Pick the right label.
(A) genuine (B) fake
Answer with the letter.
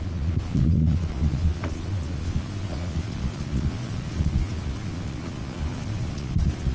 B